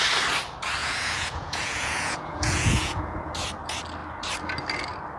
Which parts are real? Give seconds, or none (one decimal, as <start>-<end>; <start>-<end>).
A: 0.0-0.8; 3.3-5.2